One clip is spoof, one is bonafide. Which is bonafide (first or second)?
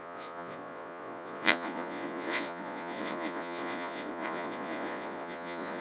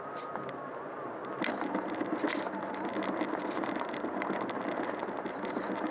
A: second